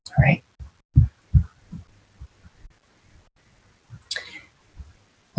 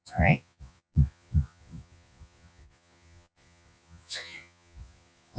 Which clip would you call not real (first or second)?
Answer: second